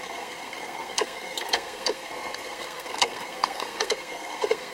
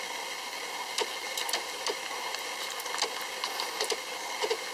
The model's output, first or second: first